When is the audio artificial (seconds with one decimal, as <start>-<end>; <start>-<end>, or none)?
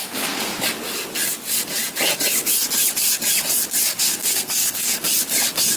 0.0-0.5; 4.0-4.9